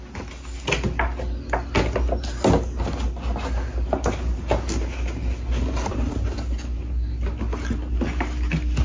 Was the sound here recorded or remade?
recorded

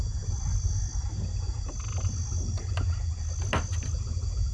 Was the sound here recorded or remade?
recorded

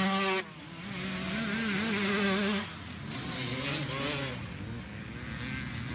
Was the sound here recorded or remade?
recorded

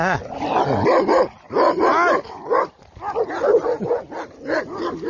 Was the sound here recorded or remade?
recorded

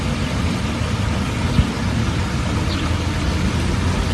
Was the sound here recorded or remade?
recorded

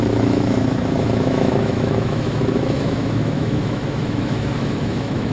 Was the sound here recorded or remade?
remade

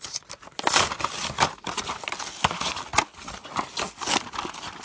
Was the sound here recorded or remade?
recorded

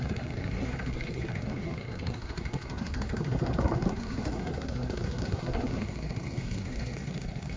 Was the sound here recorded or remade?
remade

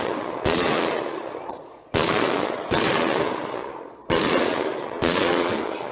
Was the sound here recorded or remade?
remade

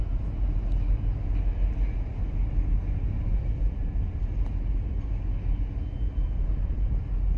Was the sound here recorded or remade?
recorded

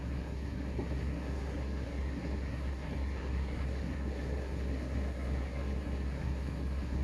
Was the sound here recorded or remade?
remade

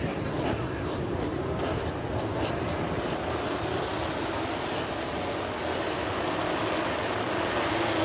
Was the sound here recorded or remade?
recorded